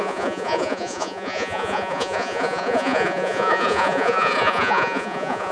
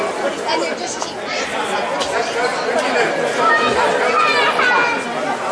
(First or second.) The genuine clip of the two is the second